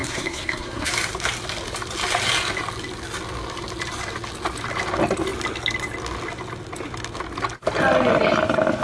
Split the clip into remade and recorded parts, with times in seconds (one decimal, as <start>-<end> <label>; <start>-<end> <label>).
0.0-0.9 remade; 0.9-8.8 recorded